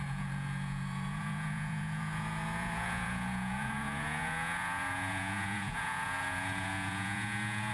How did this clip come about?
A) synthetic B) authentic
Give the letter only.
A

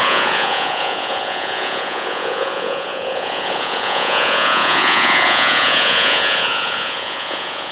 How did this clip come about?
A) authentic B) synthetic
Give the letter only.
B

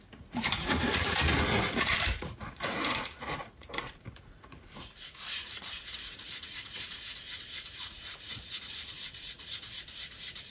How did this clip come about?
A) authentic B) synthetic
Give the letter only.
B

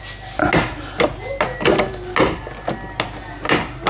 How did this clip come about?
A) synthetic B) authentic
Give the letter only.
B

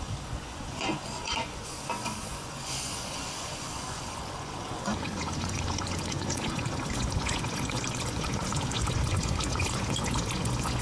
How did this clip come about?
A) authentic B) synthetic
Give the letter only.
B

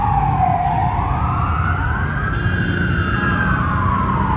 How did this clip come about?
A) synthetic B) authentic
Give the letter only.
B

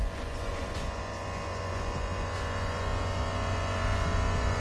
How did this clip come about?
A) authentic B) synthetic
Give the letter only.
B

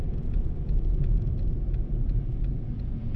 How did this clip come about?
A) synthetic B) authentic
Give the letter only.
A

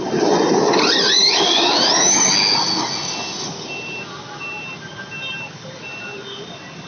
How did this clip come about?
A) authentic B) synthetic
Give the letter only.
A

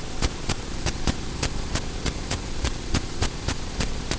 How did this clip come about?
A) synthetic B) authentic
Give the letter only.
A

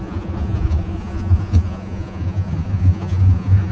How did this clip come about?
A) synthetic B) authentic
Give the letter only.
A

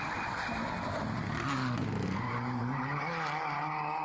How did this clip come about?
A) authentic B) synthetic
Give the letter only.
A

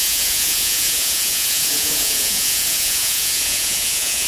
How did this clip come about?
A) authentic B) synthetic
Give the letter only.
B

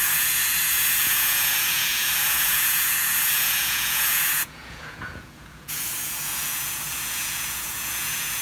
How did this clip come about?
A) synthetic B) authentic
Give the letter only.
A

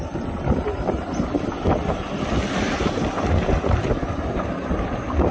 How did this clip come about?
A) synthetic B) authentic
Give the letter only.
B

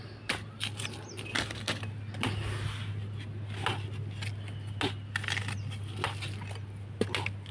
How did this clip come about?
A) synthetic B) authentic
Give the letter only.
B